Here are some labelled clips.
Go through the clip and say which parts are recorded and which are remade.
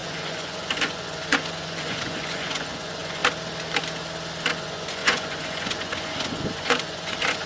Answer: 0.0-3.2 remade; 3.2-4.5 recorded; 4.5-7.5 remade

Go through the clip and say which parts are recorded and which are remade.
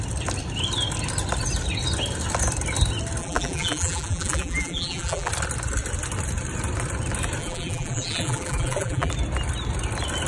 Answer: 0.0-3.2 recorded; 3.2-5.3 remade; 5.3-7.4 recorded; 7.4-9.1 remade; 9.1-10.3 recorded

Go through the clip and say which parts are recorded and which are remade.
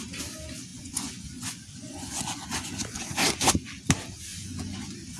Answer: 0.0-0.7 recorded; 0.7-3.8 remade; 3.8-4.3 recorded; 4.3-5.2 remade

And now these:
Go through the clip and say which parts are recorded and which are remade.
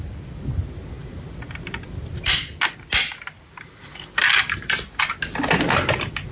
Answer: 0.0-6.3 recorded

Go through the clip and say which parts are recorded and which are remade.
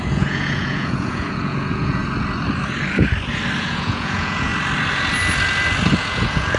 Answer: 0.0-2.0 remade; 2.0-3.6 recorded; 3.6-4.5 remade; 4.5-5.9 recorded; 5.9-6.6 remade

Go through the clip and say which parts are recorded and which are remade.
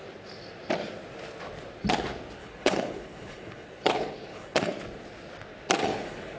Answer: 0.0-2.4 recorded; 2.4-4.7 remade; 4.7-5.8 recorded; 5.8-6.4 remade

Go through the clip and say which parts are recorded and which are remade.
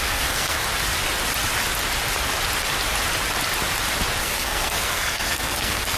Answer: 0.0-0.6 remade; 0.6-4.2 recorded; 4.2-6.0 remade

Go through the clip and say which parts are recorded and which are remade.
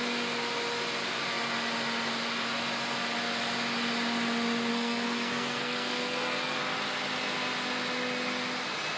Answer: 0.0-4.7 recorded; 4.7-6.6 remade; 6.6-9.0 recorded